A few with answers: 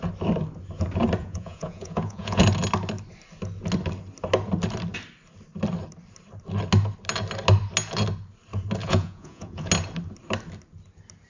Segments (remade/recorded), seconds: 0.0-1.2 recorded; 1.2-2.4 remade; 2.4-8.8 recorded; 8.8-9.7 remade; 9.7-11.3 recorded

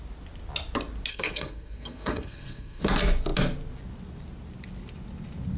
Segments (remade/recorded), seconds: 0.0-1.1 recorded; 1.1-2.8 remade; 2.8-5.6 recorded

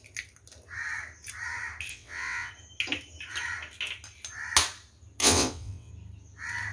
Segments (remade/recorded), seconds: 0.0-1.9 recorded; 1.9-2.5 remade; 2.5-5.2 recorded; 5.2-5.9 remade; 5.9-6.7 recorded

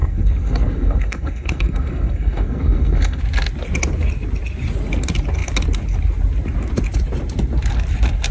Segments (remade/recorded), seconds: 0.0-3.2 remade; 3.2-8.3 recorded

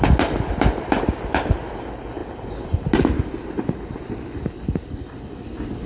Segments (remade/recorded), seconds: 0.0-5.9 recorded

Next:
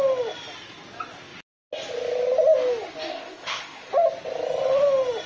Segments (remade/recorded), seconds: 0.0-3.1 recorded; 3.1-3.9 remade; 3.9-5.3 recorded